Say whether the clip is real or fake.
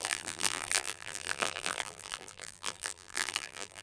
fake